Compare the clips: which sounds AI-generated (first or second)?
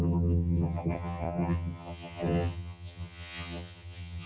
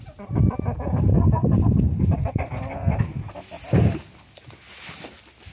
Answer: first